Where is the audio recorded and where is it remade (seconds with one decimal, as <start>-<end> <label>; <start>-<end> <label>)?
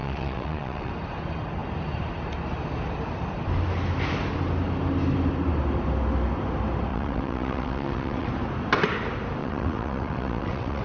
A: 0.0-0.9 remade; 0.9-6.9 recorded; 6.9-8.3 remade; 8.3-9.4 recorded; 9.4-10.8 remade